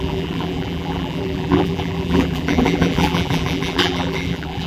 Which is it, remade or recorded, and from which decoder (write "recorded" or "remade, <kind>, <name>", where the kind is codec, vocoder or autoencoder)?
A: remade, vocoder, BigVGAN v2